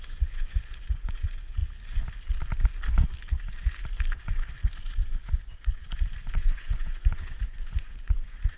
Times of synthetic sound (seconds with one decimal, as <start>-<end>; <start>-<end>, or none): 0.0-1.6; 4.3-8.6